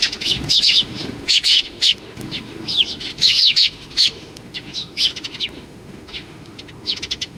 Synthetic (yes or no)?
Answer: yes